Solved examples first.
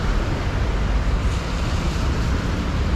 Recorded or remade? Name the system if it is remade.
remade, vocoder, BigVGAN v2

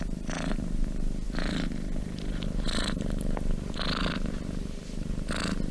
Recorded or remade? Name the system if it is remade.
remade, vocoder, BigVGAN v2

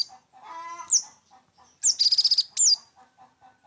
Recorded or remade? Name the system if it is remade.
recorded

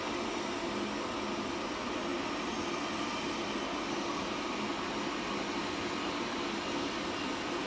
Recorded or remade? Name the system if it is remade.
recorded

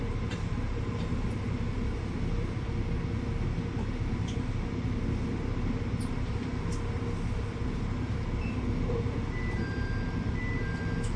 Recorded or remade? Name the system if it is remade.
recorded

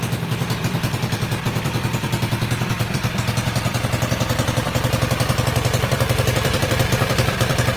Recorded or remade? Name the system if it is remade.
remade, vocoder, BigVGAN v2